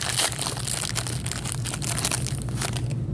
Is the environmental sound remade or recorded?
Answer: recorded